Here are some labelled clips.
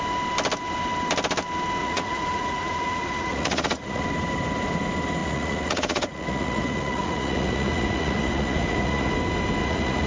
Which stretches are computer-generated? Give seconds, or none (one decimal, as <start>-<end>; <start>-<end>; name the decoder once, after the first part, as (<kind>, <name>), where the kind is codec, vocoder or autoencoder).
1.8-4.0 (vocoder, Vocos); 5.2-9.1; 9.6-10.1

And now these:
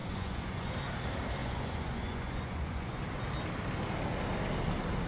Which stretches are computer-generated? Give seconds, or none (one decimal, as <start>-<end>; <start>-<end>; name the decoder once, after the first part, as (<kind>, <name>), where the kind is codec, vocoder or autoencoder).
0.0-0.7 (vocoder, Vocos); 1.4-3.0

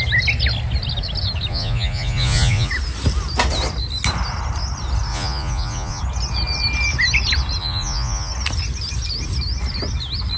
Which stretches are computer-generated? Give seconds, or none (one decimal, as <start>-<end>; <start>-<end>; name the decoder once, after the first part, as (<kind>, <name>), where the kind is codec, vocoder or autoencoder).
1.5-2.7 (vocoder, Vocos); 5.1-6.0; 7.6-8.3

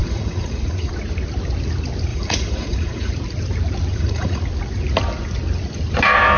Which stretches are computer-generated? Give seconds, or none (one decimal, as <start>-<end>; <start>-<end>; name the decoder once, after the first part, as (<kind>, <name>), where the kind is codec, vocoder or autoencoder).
0.0-0.9 (vocoder, Vocos); 2.1-3.1; 3.9-4.4

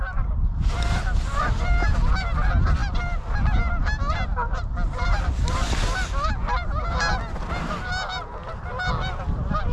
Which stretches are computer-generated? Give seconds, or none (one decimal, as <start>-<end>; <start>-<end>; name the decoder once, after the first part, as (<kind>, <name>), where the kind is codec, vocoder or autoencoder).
none

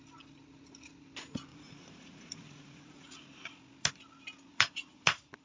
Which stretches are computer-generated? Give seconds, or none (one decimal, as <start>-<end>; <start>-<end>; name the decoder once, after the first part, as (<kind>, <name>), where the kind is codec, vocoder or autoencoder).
1.5-3.2 (vocoder, Vocos); 4.5-5.4